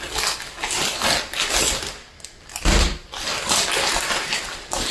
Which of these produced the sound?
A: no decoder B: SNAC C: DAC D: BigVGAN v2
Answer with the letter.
A